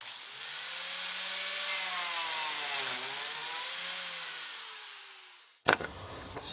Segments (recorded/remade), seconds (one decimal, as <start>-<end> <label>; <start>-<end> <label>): 0.0-5.4 recorded; 5.4-6.5 remade